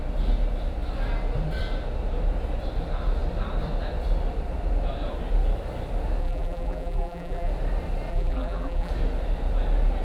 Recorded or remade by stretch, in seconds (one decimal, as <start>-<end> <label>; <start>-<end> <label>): 0.0-6.2 recorded; 6.2-7.5 remade; 7.5-8.1 recorded; 8.1-8.9 remade; 8.9-10.0 recorded